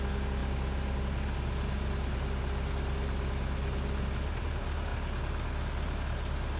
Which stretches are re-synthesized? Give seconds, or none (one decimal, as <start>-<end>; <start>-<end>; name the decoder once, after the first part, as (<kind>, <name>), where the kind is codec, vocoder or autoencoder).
none